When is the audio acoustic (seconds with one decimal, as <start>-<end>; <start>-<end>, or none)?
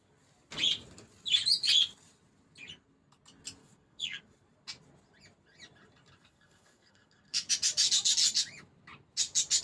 0.0-3.6; 4.2-6.2; 7.5-9.6